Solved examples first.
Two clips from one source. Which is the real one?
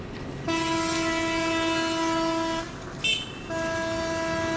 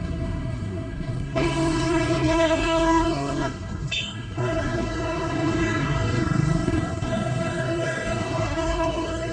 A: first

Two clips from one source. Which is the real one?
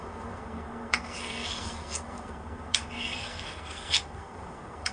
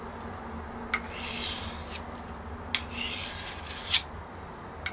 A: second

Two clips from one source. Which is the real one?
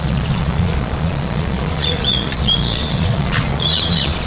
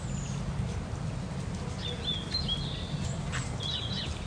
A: second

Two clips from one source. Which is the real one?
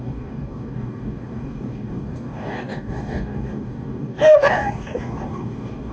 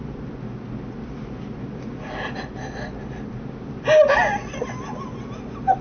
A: second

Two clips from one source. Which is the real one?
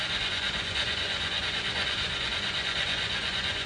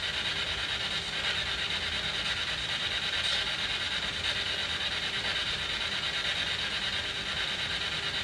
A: second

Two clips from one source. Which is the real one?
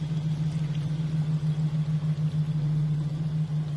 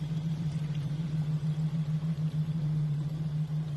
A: first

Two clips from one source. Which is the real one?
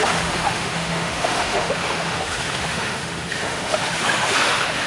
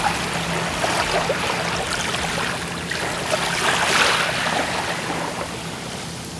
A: second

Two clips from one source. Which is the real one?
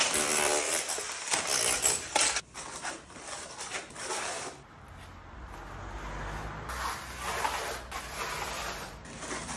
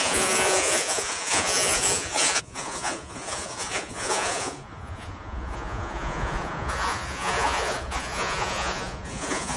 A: first